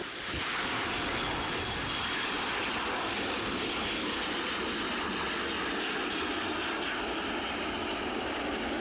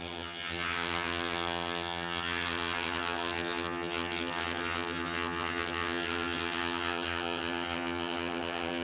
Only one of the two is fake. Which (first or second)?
second